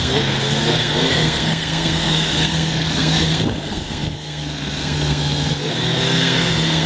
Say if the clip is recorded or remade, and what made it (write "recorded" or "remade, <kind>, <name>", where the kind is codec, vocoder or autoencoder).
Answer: remade, codec, SNAC